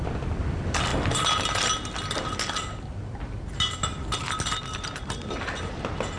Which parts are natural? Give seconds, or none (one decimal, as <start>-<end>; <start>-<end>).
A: 0.0-6.2